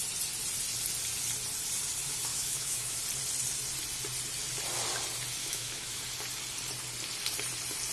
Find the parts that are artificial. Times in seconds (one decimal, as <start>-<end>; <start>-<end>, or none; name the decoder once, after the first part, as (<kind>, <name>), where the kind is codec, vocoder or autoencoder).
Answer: 2.3-3.0 (autoencoder, DAC-VAE); 5.4-6.0